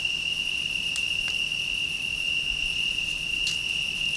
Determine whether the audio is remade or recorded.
recorded